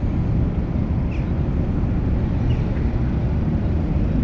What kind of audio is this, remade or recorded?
recorded